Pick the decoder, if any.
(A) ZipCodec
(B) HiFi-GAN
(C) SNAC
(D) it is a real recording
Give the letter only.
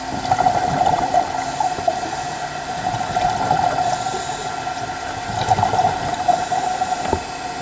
D